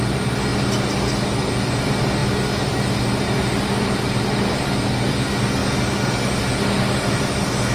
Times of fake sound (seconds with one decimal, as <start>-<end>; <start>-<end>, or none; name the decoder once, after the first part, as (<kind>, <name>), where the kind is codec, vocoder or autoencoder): none